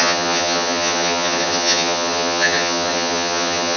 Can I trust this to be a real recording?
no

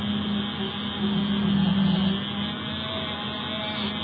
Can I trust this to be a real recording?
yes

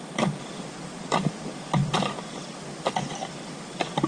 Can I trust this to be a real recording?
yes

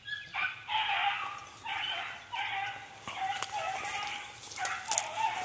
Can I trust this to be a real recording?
yes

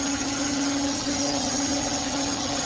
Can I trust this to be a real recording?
no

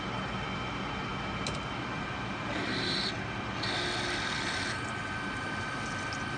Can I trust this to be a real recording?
yes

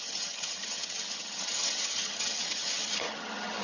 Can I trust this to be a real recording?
no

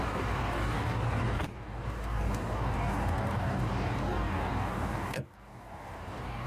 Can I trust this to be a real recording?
no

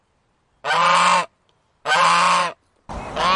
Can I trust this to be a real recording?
yes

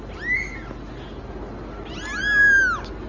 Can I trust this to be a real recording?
yes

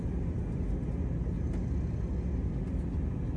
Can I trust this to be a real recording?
yes